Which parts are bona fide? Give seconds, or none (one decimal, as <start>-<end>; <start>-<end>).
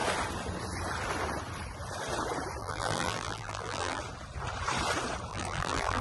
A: 0.0-2.6; 4.0-5.3